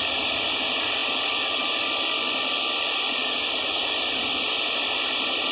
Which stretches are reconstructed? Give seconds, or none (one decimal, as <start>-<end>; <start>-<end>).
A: none